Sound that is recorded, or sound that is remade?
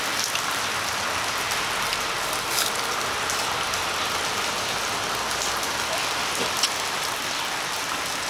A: recorded